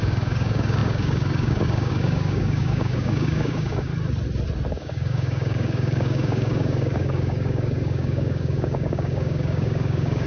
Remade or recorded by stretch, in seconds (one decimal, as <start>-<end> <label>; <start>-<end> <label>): 0.0-3.9 remade; 3.9-4.7 recorded; 4.7-10.3 remade